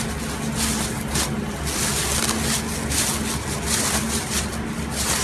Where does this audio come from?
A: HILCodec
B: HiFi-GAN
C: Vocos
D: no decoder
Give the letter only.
D